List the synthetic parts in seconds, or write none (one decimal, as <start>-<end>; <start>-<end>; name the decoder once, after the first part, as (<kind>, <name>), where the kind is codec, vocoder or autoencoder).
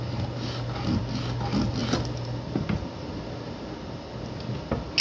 none